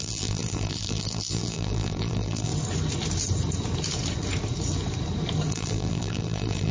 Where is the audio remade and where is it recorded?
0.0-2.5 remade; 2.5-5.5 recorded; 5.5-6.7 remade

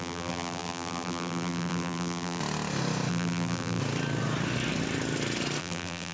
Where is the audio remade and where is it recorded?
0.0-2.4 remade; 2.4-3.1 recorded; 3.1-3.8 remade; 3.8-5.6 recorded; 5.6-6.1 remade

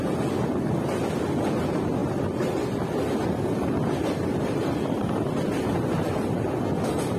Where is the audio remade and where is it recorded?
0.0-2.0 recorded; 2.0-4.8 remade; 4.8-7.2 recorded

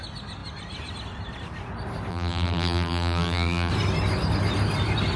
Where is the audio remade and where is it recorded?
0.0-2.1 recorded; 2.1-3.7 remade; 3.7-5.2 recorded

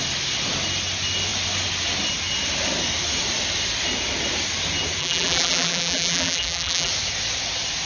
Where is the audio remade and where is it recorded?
0.0-5.0 recorded; 5.0-6.9 remade; 6.9-7.9 recorded

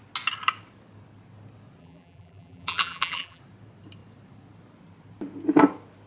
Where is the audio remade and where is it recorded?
0.0-1.8 recorded; 1.8-3.4 remade; 3.4-6.1 recorded

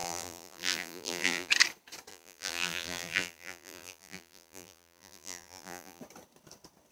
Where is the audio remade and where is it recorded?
0.0-1.5 remade; 1.5-2.1 recorded; 2.1-6.0 remade; 6.0-6.9 recorded

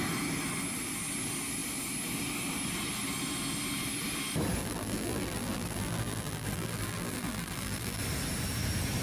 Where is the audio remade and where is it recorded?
0.0-4.6 recorded; 4.6-8.0 remade; 8.0-9.0 recorded